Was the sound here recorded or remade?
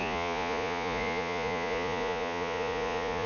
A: remade